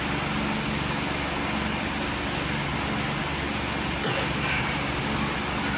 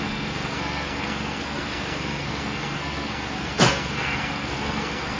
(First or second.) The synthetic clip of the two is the second